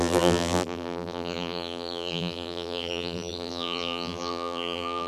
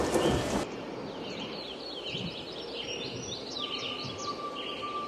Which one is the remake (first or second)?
first